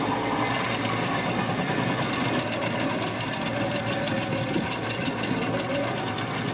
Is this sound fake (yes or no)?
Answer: no